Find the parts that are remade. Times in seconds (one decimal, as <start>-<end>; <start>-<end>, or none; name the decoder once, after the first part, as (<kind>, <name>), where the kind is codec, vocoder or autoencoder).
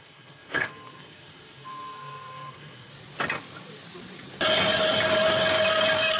0.0-2.9 (codec, SNAC)